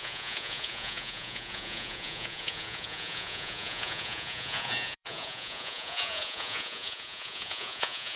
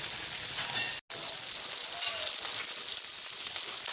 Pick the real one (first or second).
second